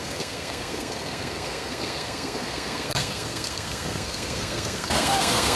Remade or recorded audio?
remade